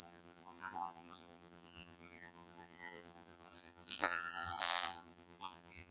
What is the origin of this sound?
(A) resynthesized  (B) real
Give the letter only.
A